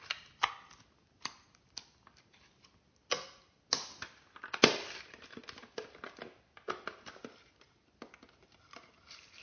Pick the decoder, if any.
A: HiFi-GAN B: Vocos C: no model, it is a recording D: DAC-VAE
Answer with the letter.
C